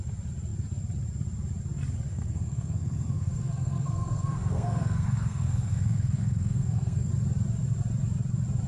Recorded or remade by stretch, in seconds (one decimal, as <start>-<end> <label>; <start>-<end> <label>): 0.0-2.1 recorded; 2.1-7.1 remade; 7.1-8.7 recorded